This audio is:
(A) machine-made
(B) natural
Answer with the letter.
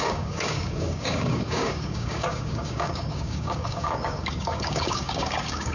A